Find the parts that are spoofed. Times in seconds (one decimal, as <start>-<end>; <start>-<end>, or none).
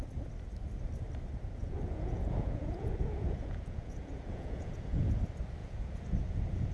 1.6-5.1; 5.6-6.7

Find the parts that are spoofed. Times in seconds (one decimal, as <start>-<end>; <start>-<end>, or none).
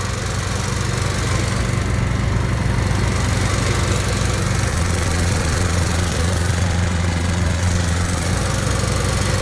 4.7-8.3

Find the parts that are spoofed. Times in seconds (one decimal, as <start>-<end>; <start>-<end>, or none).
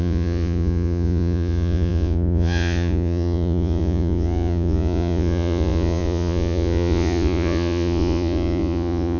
0.0-9.2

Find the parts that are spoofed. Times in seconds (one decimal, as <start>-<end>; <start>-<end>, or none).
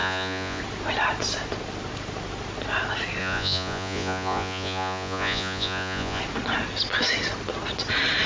0.0-0.6; 3.2-6.2